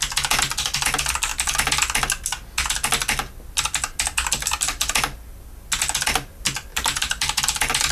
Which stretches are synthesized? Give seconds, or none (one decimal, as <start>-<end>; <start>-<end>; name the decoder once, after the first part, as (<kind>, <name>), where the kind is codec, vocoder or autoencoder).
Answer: 6.7-7.4 (vocoder, BigVGAN v2)